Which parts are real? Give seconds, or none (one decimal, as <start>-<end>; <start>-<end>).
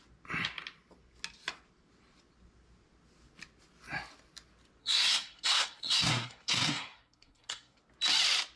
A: 0.0-4.8; 7.8-8.6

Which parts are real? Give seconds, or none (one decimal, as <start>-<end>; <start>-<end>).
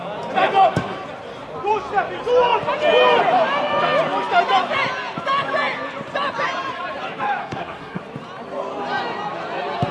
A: 0.0-7.4; 8.0-9.9